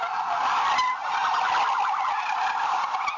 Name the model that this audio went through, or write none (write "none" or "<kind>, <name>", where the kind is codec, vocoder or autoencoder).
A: none